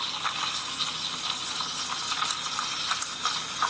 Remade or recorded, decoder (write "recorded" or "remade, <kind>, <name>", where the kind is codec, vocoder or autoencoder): recorded